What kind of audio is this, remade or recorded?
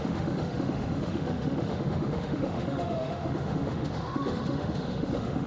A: remade